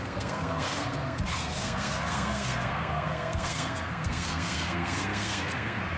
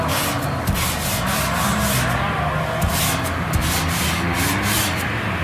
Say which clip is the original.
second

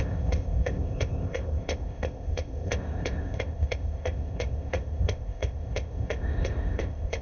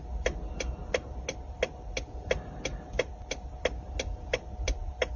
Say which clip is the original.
second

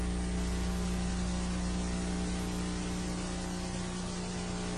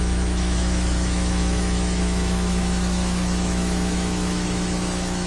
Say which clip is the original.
first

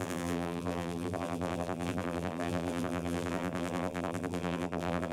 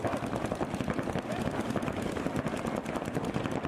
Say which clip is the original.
second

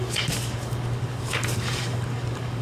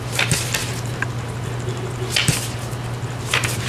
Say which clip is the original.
second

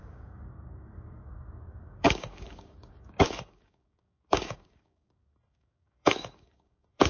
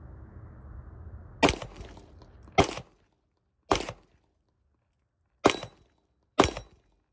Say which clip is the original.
second